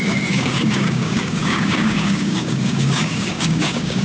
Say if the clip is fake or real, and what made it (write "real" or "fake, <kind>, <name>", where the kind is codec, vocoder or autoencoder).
fake, codec, DAC